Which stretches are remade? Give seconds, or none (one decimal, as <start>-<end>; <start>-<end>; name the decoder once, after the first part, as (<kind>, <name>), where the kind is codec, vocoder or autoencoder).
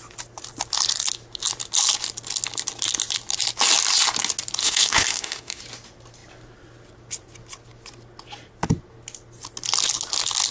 4.6-5.6 (autoencoder, DAC-VAE)